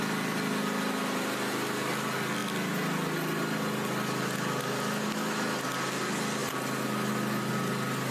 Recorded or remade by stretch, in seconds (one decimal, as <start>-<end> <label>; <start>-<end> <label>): 0.0-8.1 recorded